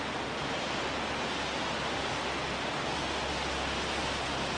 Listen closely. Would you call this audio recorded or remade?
recorded